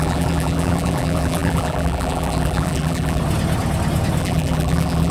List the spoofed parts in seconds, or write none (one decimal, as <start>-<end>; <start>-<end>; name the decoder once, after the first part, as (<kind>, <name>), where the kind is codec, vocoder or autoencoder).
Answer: 0.0-3.2 (vocoder, BigVGAN v2); 4.2-5.1